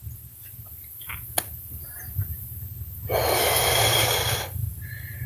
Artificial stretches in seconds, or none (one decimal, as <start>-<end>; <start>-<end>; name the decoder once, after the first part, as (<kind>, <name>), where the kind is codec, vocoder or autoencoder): none

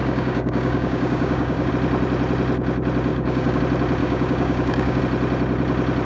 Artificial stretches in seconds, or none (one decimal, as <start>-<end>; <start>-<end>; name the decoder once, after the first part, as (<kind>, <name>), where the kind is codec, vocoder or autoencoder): 0.0-1.7 (codec, DAC); 3.1-3.6; 4.0-5.0